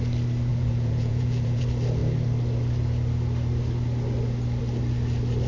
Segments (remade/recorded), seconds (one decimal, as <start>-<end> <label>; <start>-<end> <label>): 0.0-0.5 recorded; 0.5-1.6 remade; 1.6-5.5 recorded